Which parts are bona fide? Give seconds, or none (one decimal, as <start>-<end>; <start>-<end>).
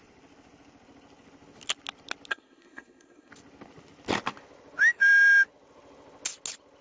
0.0-2.3; 3.3-6.8